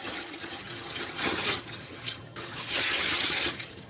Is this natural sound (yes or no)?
no